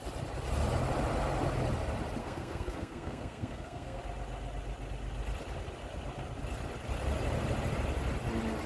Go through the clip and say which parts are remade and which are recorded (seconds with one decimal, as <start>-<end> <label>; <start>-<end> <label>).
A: 0.0-2.2 recorded; 2.2-4.0 remade; 4.0-8.7 recorded